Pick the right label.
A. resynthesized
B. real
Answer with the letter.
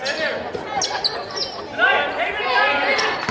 B